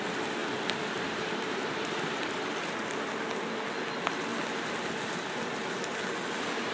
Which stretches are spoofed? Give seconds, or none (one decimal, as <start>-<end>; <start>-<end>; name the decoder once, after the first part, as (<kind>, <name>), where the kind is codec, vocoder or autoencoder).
none

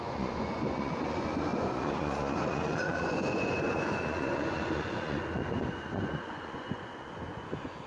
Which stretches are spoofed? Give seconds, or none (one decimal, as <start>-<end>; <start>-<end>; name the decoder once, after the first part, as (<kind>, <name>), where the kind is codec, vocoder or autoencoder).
0.0-7.9 (vocoder, Vocos)

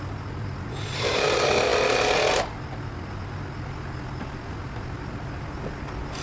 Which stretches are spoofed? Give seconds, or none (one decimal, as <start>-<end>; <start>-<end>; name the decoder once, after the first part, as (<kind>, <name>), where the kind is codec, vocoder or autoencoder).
none

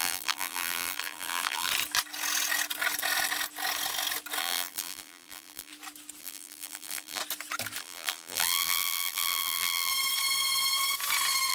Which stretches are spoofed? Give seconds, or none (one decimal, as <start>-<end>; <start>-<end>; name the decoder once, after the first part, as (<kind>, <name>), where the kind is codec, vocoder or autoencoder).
0.0-1.7 (vocoder, BigVGAN v2); 4.4-5.7; 6.2-7.2; 7.8-9.9

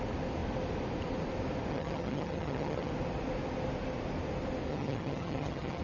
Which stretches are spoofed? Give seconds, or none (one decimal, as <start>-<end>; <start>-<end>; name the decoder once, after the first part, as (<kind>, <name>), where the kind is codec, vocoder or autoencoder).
1.7-2.9 (vocoder, HiFi-GAN); 4.7-5.8

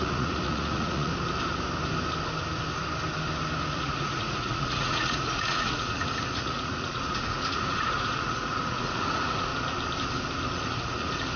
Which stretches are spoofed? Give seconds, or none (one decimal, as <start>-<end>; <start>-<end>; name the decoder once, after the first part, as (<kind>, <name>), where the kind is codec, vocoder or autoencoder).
0.0-1.1 (vocoder, Vocos); 3.7-9.5; 10.5-11.4

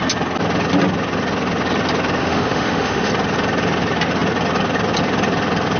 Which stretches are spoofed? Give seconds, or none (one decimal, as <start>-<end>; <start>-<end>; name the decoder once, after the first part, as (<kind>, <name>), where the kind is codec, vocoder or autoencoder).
2.2-3.1 (autoencoder, DAC-VAE)